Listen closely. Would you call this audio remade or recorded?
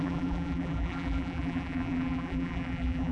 remade